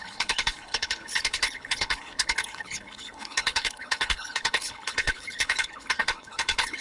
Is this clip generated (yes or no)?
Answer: yes